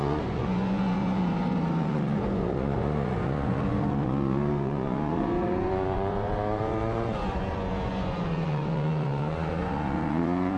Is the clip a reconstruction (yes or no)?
yes